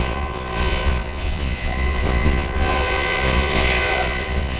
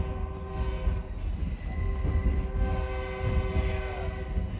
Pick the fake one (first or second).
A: first